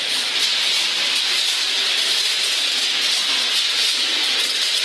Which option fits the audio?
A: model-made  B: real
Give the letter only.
B